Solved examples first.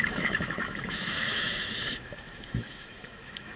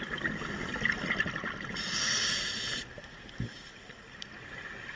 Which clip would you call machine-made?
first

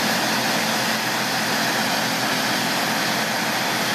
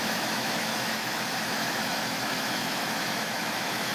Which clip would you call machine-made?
second